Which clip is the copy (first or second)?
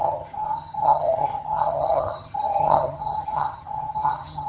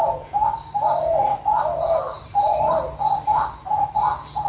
first